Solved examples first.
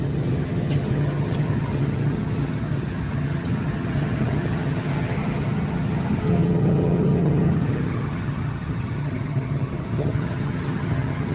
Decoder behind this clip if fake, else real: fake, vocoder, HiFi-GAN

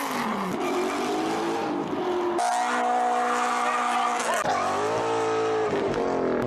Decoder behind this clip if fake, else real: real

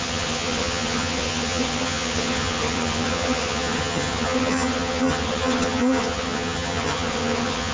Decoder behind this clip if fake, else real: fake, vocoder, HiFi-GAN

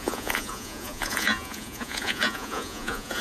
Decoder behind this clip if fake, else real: fake, vocoder, Vocos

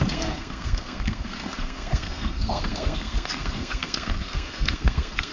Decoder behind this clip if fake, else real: fake, codec, SNAC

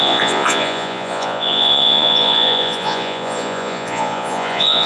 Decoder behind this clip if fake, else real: fake, vocoder, Vocos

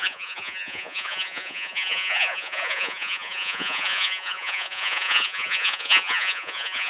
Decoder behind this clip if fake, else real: fake, vocoder, Vocos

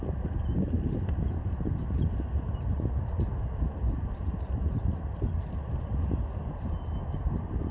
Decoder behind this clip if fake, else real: real